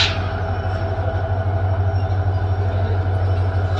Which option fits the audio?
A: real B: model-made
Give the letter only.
A